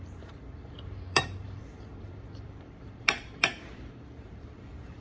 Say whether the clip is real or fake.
fake